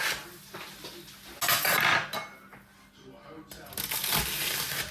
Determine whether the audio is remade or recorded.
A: recorded